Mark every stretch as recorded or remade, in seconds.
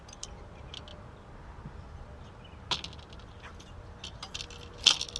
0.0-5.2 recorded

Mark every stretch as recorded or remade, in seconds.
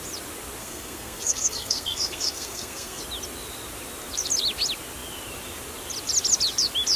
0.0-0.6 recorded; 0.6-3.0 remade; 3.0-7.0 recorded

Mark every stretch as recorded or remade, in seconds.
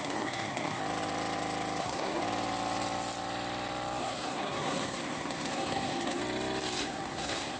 0.0-0.8 remade; 0.8-1.8 recorded; 1.8-2.2 remade; 2.2-4.0 recorded; 4.0-6.2 remade; 6.2-6.8 recorded; 6.8-7.6 remade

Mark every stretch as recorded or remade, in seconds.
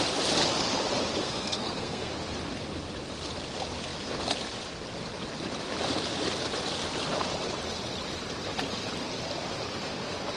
0.0-1.2 recorded; 1.2-2.1 remade; 2.1-10.4 recorded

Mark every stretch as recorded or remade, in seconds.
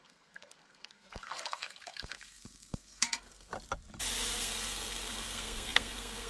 0.0-3.5 remade; 3.5-4.4 recorded; 4.4-6.3 remade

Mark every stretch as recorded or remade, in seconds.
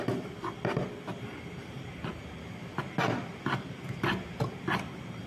0.0-5.3 recorded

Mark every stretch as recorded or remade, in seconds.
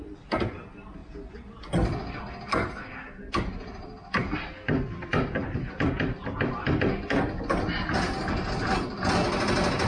0.0-9.9 recorded